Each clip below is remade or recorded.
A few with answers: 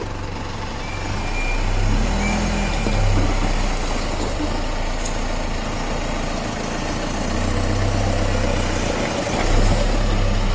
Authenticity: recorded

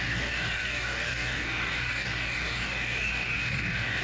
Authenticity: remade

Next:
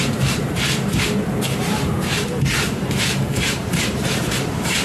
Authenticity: remade